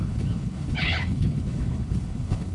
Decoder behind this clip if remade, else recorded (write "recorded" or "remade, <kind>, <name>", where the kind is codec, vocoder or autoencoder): remade, codec, HILCodec